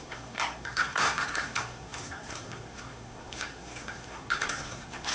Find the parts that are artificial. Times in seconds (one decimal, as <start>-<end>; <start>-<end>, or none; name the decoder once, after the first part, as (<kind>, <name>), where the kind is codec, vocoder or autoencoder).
0.0-5.1 (codec, SNAC)